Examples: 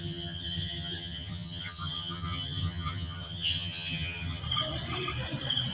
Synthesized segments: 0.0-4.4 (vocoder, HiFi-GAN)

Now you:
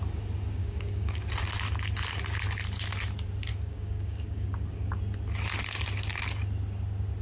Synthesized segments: 0.6-1.2 (codec, DAC); 3.5-5.0

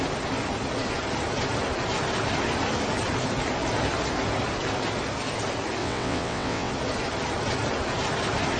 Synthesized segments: 5.8-6.7 (vocoder, WaveNeXt)

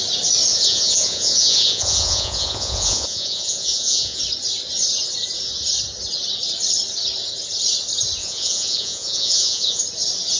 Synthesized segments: 0.5-4.2 (vocoder, Vocos); 8.2-9.8

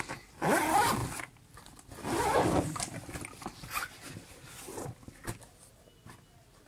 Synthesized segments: none

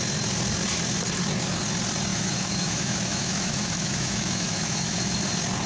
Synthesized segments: 2.1-5.2 (autoencoder, DAC-VAE)

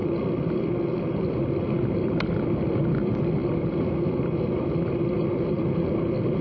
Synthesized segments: none

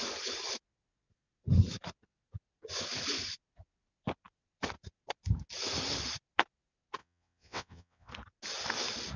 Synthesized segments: 7.0-8.1 (vocoder, WaveNeXt)